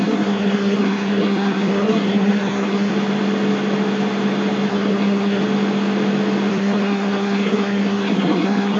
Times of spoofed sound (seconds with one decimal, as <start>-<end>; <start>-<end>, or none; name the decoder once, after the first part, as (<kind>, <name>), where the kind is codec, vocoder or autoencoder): 0.0-2.9 (codec, SNAC); 4.7-5.4; 6.5-8.8